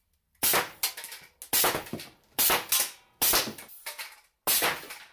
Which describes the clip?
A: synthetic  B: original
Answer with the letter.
B